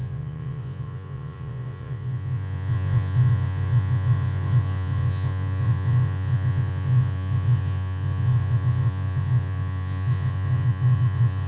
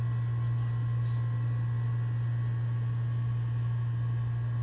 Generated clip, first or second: first